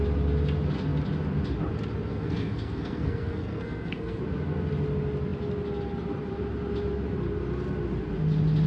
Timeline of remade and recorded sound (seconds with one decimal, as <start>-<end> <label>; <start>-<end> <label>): 0.0-2.1 recorded; 2.1-4.2 remade; 4.2-8.7 recorded